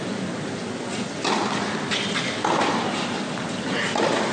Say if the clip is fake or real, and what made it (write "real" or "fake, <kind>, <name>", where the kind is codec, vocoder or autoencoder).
real